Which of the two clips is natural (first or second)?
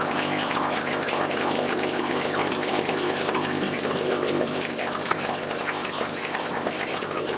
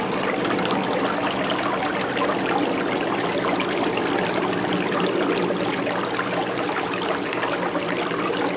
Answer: second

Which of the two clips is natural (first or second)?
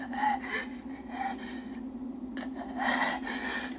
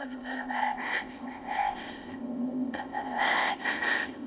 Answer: first